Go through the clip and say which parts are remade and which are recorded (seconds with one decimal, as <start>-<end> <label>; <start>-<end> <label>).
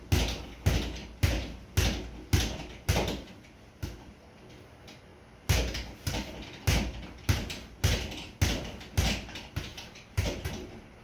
0.0-9.7 recorded; 9.7-10.5 remade; 10.5-11.0 recorded